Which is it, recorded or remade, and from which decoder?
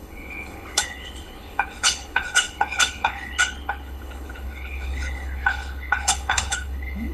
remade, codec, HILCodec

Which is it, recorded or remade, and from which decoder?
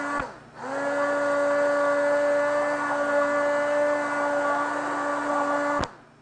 recorded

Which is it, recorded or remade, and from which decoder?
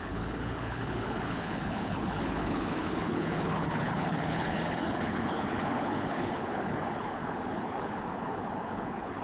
remade, codec, HILCodec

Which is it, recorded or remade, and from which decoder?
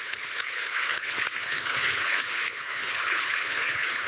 remade, codec, HILCodec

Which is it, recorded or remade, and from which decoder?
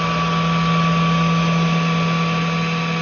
recorded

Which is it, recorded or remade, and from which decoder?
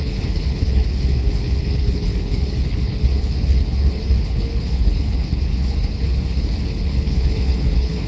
remade, codec, HILCodec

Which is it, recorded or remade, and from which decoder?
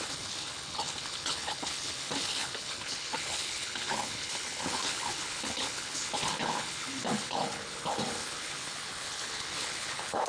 remade, codec, HILCodec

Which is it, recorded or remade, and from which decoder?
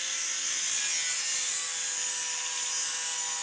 recorded